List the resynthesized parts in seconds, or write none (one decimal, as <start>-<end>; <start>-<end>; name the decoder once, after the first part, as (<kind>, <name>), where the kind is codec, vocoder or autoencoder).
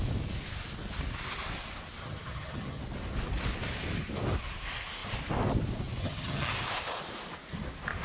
2.0-2.8 (vocoder, HiFi-GAN); 6.0-6.5